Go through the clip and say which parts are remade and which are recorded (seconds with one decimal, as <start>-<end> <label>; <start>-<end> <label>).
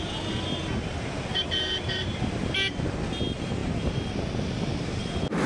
0.0-5.5 recorded